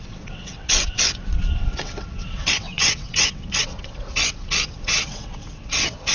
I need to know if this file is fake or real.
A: fake